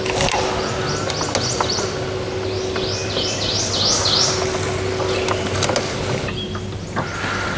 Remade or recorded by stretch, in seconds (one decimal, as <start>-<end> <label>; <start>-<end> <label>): 0.0-7.6 recorded